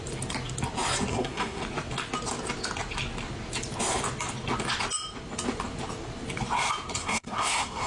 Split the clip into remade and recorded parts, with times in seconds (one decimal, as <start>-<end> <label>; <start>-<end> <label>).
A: 0.0-1.1 recorded; 1.1-1.6 remade; 1.6-7.0 recorded; 7.0-7.9 remade